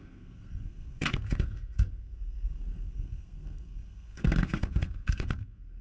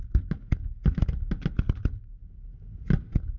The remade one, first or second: first